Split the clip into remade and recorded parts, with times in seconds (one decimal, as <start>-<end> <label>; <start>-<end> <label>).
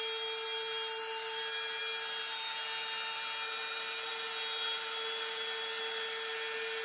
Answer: 0.0-6.8 recorded